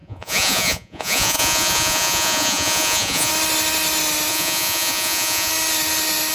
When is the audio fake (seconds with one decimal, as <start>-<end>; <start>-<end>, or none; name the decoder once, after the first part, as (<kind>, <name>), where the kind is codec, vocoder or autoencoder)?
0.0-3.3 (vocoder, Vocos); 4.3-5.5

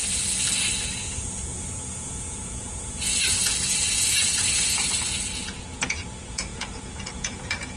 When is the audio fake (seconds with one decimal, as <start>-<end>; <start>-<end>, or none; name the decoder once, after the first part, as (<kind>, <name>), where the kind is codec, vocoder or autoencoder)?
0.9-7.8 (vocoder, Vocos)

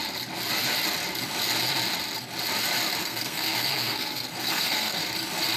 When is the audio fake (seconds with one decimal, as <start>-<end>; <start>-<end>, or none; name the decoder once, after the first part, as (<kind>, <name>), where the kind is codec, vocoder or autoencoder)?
3.0-5.0 (codec, SNAC)